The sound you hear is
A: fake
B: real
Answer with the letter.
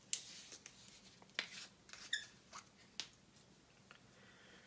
B